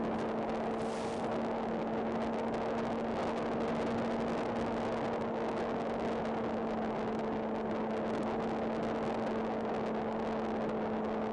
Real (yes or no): yes